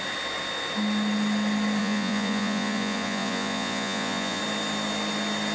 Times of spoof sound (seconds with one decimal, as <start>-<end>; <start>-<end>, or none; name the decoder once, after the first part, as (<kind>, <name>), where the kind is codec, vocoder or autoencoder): 1.8-4.4 (vocoder, Vocos)